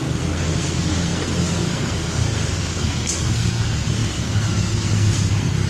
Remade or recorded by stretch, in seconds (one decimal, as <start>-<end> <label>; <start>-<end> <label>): 0.0-5.7 remade